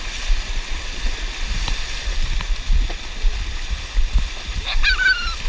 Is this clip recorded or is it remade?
recorded